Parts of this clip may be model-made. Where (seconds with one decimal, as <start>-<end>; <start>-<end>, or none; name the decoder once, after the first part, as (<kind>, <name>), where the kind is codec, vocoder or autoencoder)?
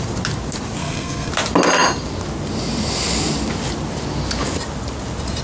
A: 0.8-1.3 (codec, SNAC)